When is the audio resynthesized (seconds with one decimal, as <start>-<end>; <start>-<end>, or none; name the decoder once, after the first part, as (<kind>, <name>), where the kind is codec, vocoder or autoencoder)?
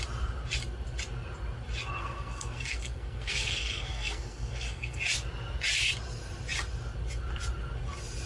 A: 2.0-5.0 (codec, SNAC)